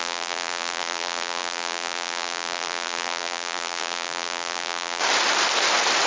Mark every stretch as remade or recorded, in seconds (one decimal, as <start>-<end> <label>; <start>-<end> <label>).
0.0-5.0 remade; 5.0-6.1 recorded